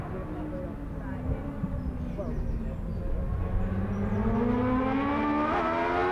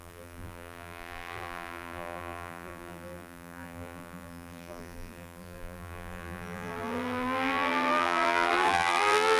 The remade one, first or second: second